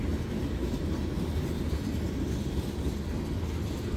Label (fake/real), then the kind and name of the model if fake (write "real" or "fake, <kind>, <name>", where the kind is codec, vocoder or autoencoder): real